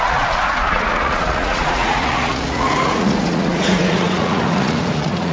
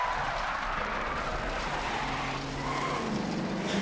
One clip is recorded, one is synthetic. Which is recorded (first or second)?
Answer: second